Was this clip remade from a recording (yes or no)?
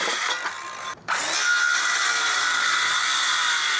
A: no